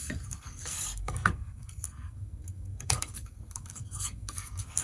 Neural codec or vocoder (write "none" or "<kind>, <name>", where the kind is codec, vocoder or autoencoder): codec, SNAC